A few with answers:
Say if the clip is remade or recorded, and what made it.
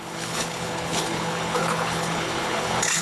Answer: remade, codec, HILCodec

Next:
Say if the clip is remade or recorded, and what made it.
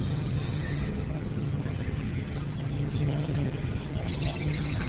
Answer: remade, vocoder, HiFi-GAN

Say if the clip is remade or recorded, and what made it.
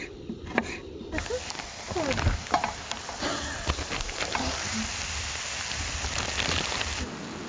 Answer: recorded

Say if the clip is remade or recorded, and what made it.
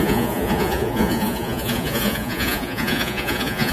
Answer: remade, vocoder, Vocos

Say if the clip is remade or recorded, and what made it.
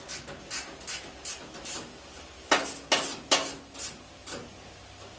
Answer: recorded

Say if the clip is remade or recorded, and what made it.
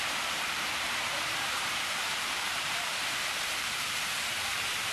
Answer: remade, vocoder, BigVGAN v2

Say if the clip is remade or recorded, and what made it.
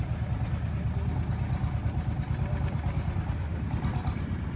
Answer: recorded